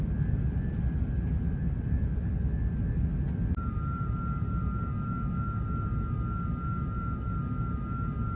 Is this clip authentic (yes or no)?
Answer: yes